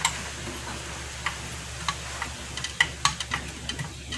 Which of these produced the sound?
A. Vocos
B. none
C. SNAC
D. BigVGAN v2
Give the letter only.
B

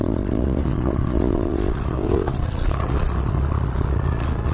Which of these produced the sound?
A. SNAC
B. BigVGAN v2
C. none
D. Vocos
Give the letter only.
D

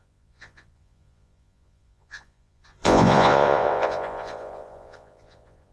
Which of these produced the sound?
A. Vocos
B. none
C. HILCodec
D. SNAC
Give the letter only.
A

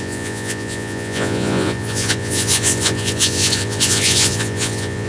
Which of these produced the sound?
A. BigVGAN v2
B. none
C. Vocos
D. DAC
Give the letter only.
C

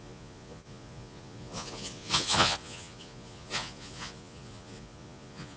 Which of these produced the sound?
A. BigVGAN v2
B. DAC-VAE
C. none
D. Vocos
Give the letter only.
D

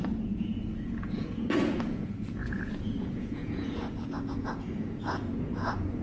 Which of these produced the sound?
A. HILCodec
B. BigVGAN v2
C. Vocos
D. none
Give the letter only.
C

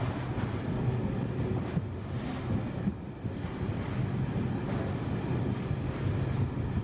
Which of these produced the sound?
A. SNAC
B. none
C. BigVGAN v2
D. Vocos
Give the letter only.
B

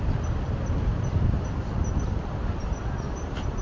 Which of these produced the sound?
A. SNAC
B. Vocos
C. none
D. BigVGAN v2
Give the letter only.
C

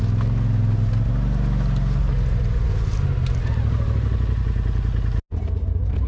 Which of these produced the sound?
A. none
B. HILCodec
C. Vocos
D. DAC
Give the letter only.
A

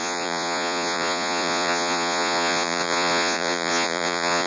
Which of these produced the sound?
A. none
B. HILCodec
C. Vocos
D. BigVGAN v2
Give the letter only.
C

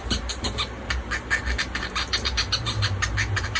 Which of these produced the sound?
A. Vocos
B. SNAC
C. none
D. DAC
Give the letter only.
C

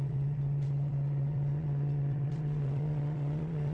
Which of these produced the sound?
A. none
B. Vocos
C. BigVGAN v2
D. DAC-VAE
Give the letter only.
B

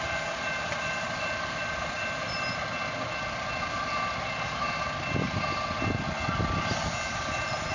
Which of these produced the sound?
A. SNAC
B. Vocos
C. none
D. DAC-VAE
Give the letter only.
C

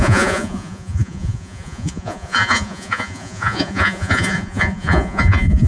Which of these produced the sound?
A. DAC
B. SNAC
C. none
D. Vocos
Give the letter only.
D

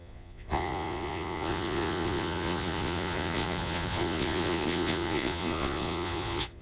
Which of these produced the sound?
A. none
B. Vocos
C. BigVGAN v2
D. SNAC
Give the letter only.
B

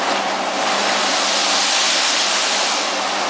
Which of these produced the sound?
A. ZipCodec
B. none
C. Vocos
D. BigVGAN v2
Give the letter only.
B